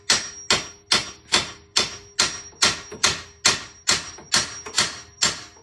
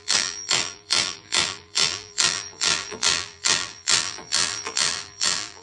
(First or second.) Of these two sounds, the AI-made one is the second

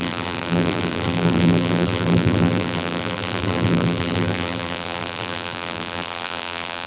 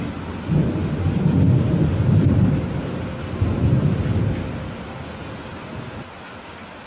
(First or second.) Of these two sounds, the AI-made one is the first